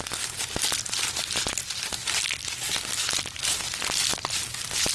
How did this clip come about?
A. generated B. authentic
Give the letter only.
B